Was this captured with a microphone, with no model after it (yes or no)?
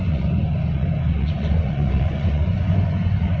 no